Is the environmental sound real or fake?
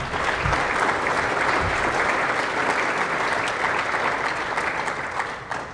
real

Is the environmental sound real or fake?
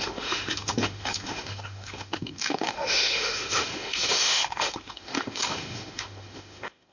fake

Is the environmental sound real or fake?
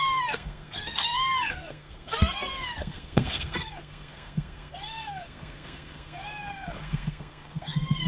fake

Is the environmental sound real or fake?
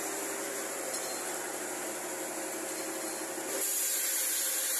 real